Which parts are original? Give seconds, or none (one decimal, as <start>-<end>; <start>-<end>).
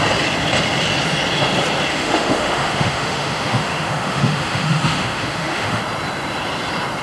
0.0-1.9; 5.8-7.0